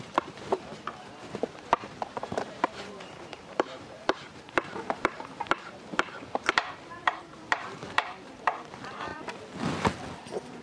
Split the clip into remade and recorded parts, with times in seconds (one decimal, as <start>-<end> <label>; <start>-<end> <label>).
0.0-9.1 remade; 9.1-10.6 recorded